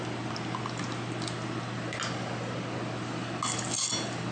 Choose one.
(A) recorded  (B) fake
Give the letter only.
A